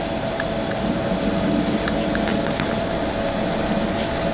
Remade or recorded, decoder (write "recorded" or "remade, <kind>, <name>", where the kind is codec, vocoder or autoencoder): recorded